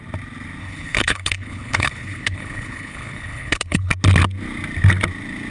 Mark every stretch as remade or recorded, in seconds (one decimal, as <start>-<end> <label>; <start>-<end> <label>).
0.0-0.6 recorded; 0.6-3.9 remade; 3.9-5.5 recorded

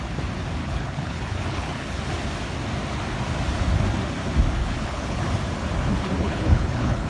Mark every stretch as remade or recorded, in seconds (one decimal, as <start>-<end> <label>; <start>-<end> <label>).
0.0-0.6 recorded; 0.6-2.0 remade; 2.0-4.6 recorded; 4.6-5.2 remade; 5.2-6.2 recorded; 6.2-7.1 remade

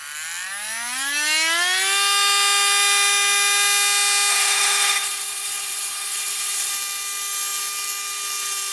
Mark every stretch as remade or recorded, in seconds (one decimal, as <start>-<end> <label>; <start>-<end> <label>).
0.0-4.3 recorded; 4.3-6.7 remade; 6.7-8.7 recorded

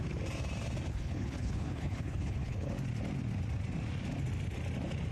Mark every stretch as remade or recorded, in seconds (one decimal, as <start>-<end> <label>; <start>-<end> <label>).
0.0-0.9 recorded; 0.9-2.7 remade; 2.7-5.1 recorded

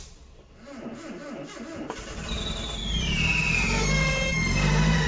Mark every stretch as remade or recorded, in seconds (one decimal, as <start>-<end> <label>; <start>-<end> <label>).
0.0-5.1 recorded